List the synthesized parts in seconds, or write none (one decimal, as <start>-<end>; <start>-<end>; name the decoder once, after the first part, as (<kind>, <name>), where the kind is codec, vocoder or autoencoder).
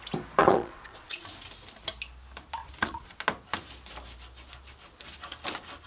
0.4-1.3 (vocoder, Vocos); 2.6-3.2